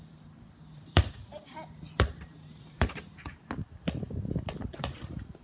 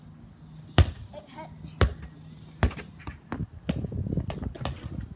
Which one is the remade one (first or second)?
first